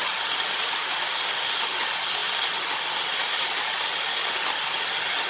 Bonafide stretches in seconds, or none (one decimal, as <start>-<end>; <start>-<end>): 0.0-5.3